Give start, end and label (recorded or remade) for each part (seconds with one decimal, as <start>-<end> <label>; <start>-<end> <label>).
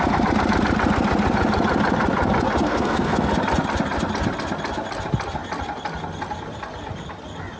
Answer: 0.0-2.6 recorded; 2.6-3.3 remade; 3.3-7.6 recorded